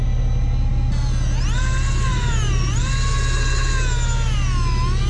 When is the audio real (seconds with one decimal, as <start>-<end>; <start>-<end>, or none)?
0.0-2.1; 2.9-5.1